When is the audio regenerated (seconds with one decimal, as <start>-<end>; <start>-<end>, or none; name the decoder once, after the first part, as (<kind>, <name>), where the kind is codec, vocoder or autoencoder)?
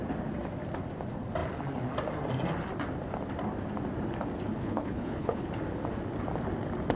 4.6-5.5 (codec, HILCodec)